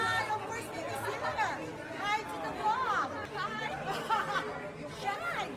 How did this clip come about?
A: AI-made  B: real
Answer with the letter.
B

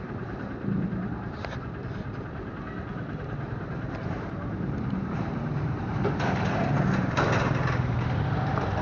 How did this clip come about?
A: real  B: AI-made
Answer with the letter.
B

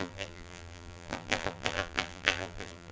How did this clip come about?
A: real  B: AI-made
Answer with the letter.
B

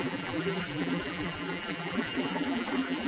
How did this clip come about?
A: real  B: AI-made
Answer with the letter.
B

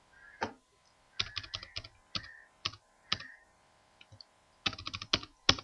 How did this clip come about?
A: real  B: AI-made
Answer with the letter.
A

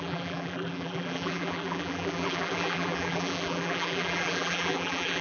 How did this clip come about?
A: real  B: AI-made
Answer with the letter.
B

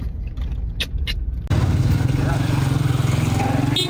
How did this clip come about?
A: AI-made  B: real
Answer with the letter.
B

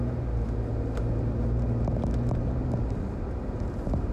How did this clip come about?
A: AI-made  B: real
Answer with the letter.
B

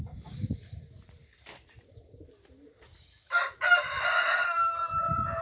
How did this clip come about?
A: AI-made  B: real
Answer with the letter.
A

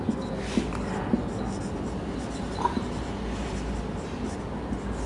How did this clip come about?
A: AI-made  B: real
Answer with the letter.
B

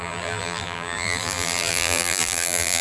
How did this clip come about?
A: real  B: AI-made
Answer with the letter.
B